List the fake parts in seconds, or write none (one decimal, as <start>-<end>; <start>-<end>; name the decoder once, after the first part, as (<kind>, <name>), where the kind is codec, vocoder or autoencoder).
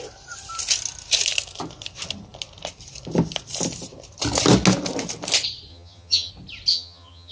5.7-6.3 (vocoder, HiFi-GAN); 6.7-7.3